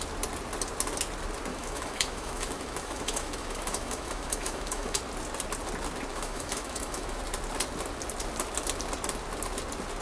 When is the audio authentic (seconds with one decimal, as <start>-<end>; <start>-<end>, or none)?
0.0-1.5; 5.0-6.1; 7.2-10.0